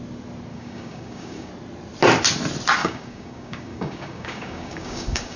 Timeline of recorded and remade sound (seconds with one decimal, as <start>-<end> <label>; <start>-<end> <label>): 0.0-0.5 recorded; 0.5-1.5 remade; 1.5-2.8 recorded; 2.8-5.4 remade